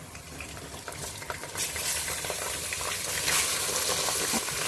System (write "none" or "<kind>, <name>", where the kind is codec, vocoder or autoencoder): none